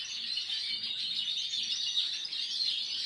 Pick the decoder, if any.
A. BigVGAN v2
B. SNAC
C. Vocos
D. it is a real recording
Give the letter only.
D